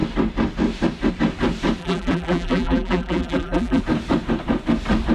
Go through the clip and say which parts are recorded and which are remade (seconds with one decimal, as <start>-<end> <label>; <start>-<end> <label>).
0.0-1.8 recorded; 1.8-3.8 remade; 3.8-5.1 recorded